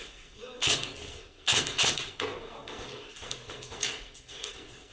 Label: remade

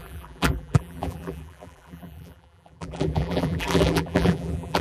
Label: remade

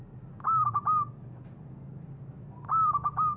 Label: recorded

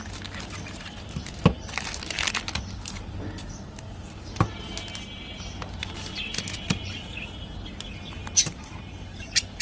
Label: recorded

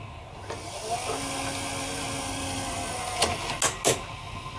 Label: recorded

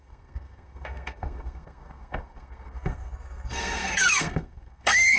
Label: remade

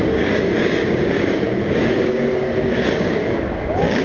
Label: remade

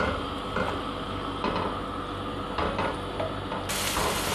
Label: recorded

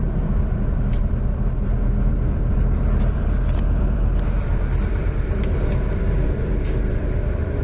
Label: remade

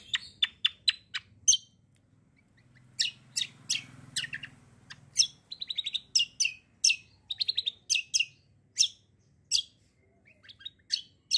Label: recorded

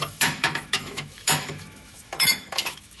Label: remade